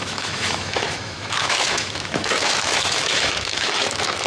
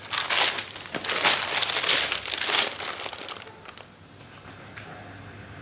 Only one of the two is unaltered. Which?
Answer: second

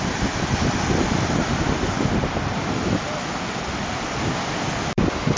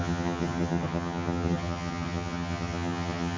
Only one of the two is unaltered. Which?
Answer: first